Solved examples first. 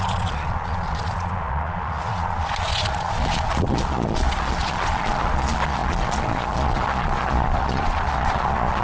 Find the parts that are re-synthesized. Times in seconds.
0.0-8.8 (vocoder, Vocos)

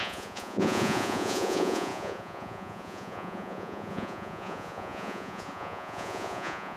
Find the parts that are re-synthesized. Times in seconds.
0.0-6.8 (vocoder, Vocos)

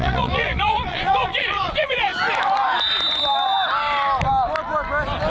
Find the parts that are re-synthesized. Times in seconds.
0.0-2.1 (vocoder, Vocos)

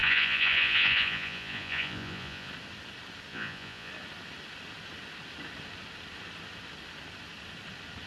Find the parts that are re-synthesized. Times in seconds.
0.0-2.5 (vocoder, Vocos); 3.3-3.9

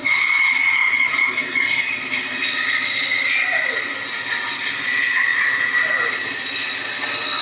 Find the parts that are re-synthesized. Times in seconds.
none

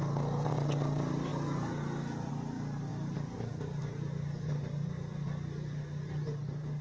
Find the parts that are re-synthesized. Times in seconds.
none

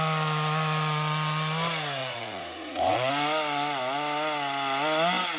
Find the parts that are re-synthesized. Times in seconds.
2.0-3.1 (vocoder, Vocos)